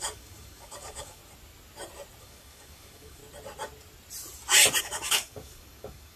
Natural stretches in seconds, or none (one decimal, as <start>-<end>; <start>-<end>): 1.2-2.2; 3.2-4.8

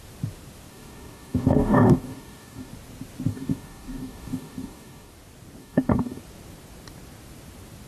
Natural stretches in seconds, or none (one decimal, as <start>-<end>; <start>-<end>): 0.0-0.7; 2.7-3.3; 5.1-5.6; 6.2-7.9

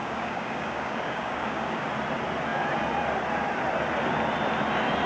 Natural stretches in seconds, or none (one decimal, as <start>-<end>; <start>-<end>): 1.9-5.1

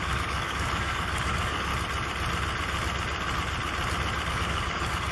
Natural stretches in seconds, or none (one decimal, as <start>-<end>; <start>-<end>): 1.7-4.3